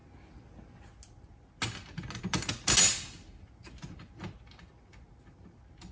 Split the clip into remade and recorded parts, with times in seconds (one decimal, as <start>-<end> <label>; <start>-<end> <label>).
0.0-5.9 recorded